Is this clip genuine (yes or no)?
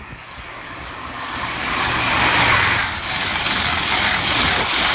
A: no